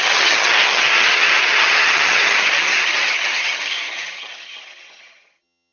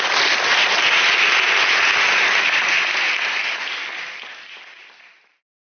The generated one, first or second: first